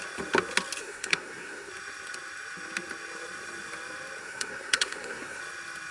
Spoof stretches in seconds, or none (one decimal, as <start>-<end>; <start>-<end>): 0.8-1.7; 4.2-5.4